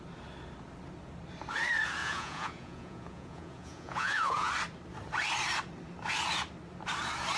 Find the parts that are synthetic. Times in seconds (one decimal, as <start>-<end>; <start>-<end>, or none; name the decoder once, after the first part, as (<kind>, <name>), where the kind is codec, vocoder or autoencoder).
2.0-4.5 (vocoder, Vocos)